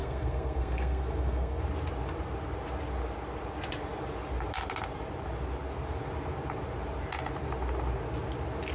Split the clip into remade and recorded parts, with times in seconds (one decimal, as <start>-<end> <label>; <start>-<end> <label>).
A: 0.0-1.6 remade; 1.6-8.7 recorded